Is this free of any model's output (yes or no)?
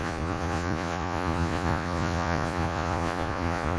no